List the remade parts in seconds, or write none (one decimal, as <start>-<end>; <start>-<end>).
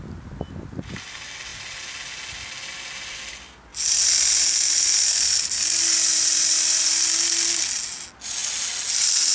none